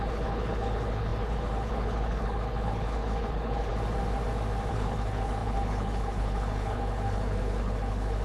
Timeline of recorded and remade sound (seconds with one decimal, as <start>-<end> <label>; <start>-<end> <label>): 0.0-3.7 remade; 3.7-4.7 recorded; 4.7-8.2 remade